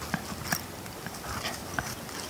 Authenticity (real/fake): real